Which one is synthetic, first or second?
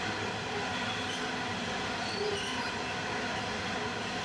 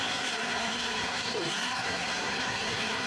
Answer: second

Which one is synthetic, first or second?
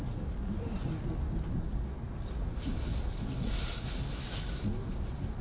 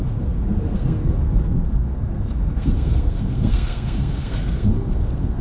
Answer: second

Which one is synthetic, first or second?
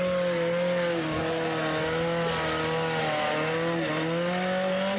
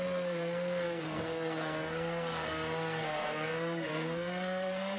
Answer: second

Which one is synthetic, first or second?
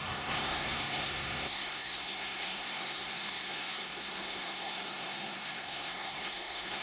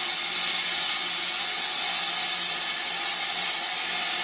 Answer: first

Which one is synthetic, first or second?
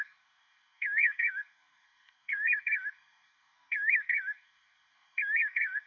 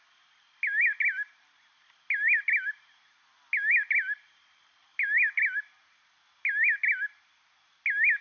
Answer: first